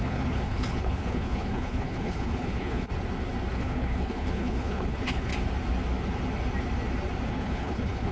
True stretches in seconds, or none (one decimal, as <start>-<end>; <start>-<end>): 2.9-3.5; 5.3-7.3